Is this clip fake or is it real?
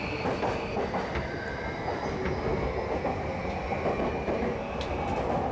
real